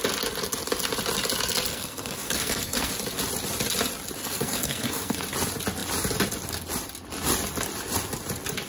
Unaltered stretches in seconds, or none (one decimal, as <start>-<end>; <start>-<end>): 0.0-1.7; 2.9-4.2; 5.2-8.7